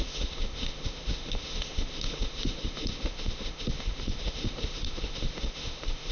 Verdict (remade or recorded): remade